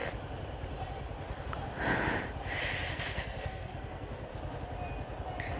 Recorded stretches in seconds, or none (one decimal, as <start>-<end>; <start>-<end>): 0.0-2.9; 4.3-5.6

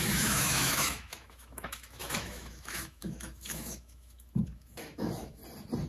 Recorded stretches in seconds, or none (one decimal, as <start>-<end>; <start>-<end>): 5.4-5.9

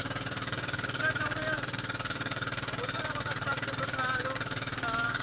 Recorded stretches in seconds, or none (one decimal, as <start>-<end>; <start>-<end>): none